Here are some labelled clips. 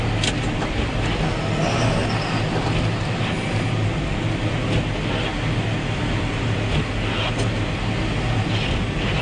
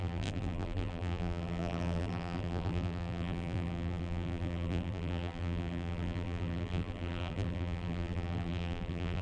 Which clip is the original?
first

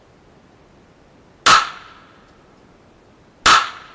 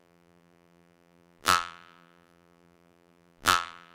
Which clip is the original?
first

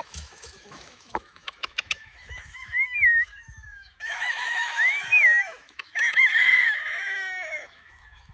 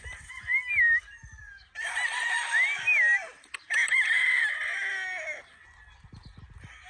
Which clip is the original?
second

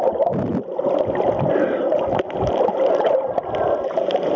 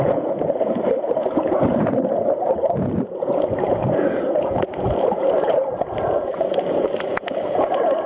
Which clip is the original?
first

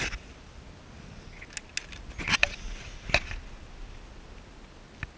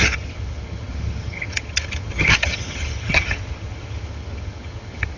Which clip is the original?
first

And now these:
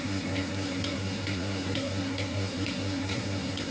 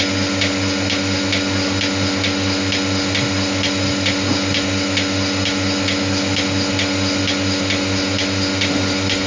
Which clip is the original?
second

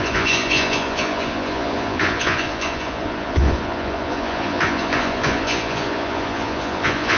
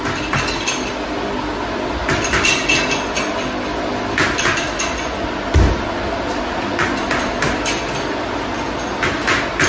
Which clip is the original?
second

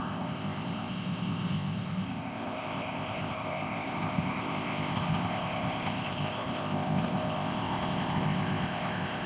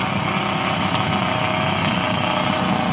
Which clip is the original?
second